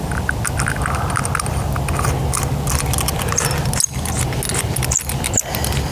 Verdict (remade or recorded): recorded